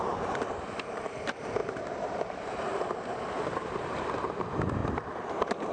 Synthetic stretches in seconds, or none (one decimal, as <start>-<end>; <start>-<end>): 0.0-4.8; 5.3-5.7

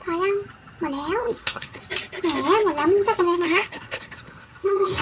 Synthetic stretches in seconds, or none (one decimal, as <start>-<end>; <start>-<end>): 1.2-1.8; 3.2-5.0

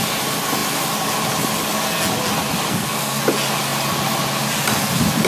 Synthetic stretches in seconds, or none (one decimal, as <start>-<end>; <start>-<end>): 2.7-3.2

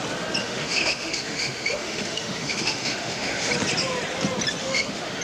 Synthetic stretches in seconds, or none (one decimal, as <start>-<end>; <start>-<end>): 0.4-3.5; 4.6-5.2

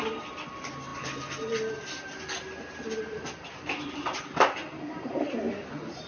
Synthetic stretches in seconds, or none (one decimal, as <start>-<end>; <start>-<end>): none

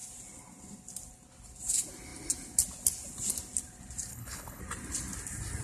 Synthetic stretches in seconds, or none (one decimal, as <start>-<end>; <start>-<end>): 4.1-4.6

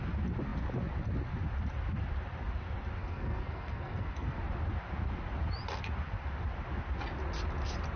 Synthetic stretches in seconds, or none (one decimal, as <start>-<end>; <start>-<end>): 3.0-4.4